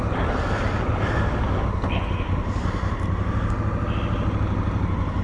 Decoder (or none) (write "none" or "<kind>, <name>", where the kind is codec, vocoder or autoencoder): none